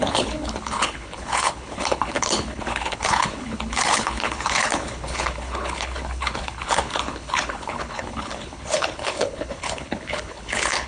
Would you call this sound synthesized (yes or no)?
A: yes